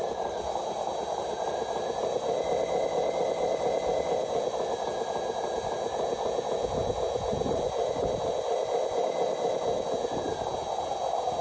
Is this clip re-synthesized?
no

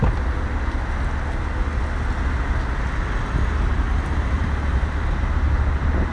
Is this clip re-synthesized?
no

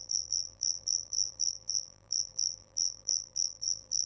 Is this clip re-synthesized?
yes